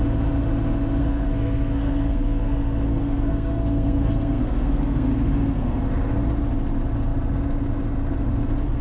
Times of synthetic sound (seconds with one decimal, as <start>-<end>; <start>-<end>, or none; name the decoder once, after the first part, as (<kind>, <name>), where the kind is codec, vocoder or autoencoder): 1.0-5.8 (codec, SNAC)